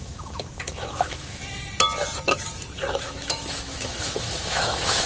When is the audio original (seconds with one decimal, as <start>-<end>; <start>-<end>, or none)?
1.4-3.0